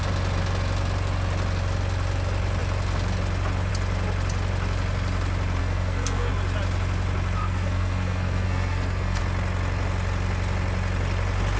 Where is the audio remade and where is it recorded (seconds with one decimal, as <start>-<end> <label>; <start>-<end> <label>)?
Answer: 0.0-5.6 recorded; 5.6-6.3 remade; 6.3-7.4 recorded; 7.4-9.2 remade; 9.2-11.6 recorded